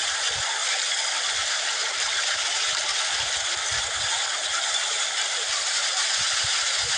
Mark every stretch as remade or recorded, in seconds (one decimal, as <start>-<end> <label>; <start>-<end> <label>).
0.0-1.4 recorded; 1.4-2.4 remade; 2.4-7.0 recorded